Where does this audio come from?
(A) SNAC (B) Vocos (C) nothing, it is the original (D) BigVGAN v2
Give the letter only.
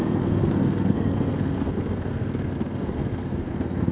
A